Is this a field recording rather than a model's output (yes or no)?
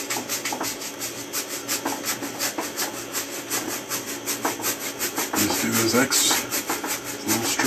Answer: yes